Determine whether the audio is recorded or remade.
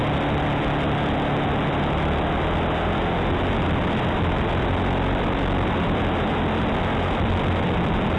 recorded